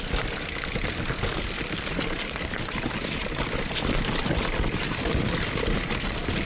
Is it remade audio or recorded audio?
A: recorded